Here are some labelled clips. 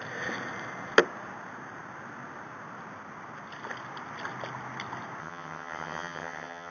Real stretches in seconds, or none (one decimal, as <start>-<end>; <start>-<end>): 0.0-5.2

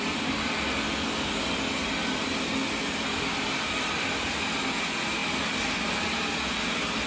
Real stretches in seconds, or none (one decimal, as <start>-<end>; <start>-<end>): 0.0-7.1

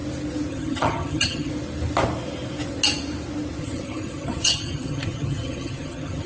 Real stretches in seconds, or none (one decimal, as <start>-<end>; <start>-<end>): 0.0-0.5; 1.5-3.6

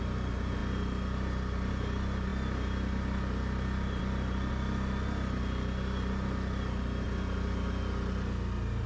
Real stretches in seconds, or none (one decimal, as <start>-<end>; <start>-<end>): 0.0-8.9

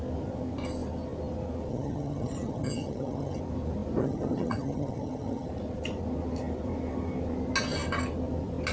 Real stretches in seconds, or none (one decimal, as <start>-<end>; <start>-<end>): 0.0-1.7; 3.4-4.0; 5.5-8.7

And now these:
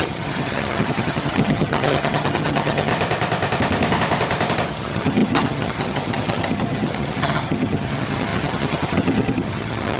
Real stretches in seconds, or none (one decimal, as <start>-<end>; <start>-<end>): 2.9-4.7

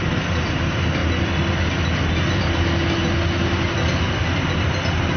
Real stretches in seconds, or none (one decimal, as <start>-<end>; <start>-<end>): 0.0-5.2